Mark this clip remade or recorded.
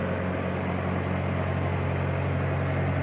recorded